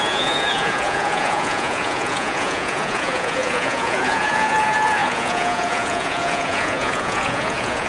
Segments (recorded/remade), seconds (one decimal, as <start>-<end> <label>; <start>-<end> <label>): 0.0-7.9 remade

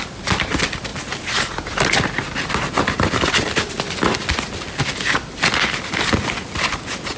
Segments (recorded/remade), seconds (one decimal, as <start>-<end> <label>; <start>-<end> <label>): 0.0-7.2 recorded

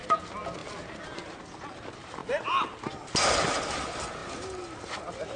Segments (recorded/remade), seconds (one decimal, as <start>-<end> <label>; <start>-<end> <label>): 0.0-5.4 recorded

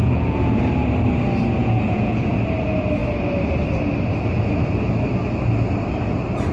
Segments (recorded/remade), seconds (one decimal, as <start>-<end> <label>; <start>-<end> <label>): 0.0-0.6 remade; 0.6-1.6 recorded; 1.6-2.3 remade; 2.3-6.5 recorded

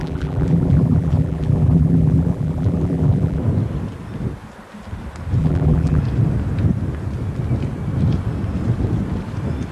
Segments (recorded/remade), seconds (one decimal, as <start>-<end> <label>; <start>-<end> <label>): 0.0-3.4 remade; 3.4-5.4 recorded; 5.4-6.0 remade; 6.0-9.7 recorded

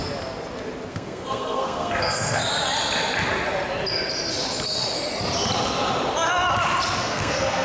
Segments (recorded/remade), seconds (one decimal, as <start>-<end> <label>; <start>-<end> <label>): 0.0-0.9 recorded; 0.9-2.4 remade; 2.4-7.0 recorded; 7.0-7.6 remade

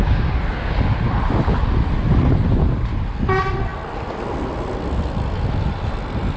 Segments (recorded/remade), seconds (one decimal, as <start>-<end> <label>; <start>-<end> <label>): 0.0-6.4 recorded